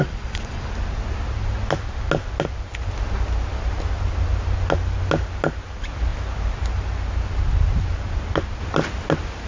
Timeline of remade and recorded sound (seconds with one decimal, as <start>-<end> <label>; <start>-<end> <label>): 0.0-0.7 remade; 0.7-9.5 recorded